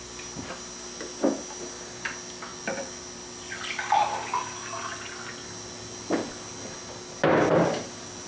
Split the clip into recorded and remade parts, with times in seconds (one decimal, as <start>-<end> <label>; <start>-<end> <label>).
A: 0.0-8.3 recorded

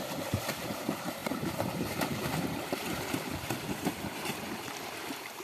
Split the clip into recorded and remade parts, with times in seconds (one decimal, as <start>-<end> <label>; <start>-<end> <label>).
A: 0.0-5.4 remade

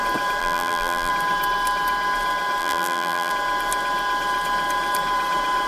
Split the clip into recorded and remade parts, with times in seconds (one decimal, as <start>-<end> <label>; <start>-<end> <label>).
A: 0.0-0.4 recorded; 0.4-1.1 remade; 1.1-2.6 recorded; 2.6-3.3 remade; 3.3-5.7 recorded